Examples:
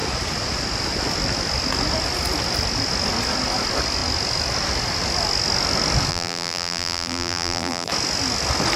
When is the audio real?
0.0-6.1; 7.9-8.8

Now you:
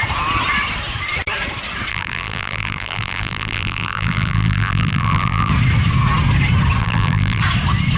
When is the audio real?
0.0-1.9; 5.5-6.8; 7.4-8.0

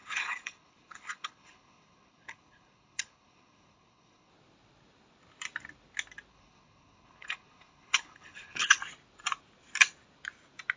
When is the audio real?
4.3-6.3; 8.8-10.8

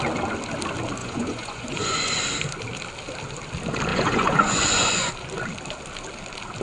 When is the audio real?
0.0-1.0; 2.2-3.9; 5.1-6.6

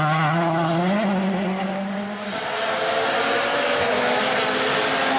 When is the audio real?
0.0-3.5; 4.2-5.2

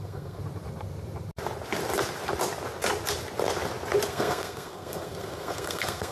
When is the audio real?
0.4-4.1

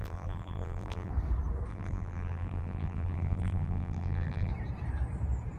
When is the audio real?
1.1-1.7; 4.5-5.6

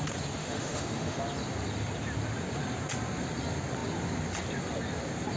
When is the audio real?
0.0-0.4; 1.2-5.4